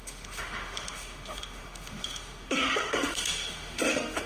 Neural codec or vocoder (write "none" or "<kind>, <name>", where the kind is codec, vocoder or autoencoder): autoencoder, DAC-VAE